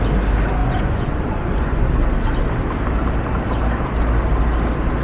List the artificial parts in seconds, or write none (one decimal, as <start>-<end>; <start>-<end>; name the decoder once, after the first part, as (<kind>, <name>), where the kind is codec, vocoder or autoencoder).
0.6-1.9 (vocoder, Vocos)